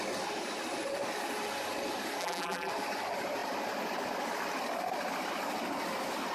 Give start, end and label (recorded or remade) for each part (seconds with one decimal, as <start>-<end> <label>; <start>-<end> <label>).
0.0-2.2 recorded; 2.2-2.7 remade; 2.7-6.3 recorded